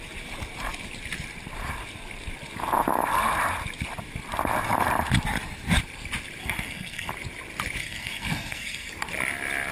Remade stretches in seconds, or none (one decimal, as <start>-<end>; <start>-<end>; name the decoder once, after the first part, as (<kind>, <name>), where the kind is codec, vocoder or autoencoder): 6.4-7.1 (codec, SNAC); 7.8-8.9